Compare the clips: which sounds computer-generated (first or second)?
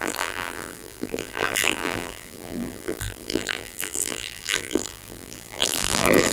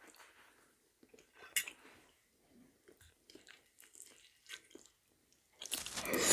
first